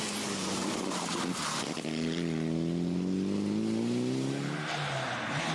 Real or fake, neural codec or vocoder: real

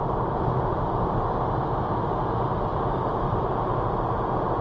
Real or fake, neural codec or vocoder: real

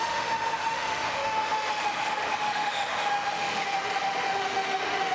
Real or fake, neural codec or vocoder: fake, autoencoder, DAC-VAE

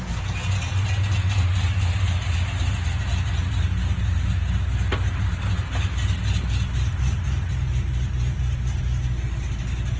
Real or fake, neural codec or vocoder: real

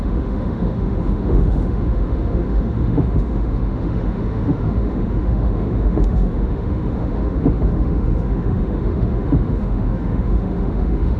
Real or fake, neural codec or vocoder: fake, autoencoder, DAC-VAE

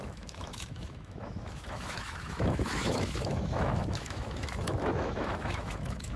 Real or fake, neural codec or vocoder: fake, autoencoder, DAC-VAE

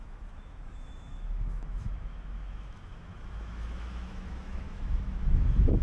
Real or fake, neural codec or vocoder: fake, autoencoder, DAC-VAE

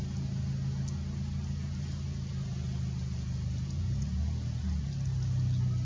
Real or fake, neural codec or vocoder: real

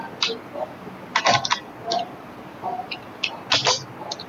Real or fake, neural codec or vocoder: real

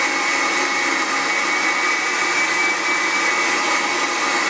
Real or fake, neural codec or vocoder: real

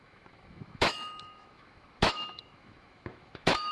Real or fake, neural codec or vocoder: fake, autoencoder, DAC-VAE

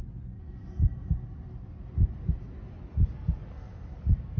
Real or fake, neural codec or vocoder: real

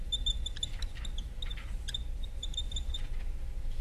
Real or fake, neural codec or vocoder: real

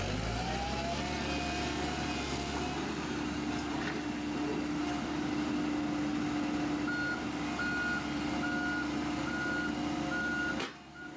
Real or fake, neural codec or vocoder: real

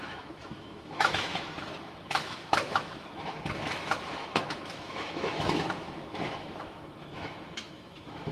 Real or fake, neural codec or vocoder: fake, autoencoder, DAC-VAE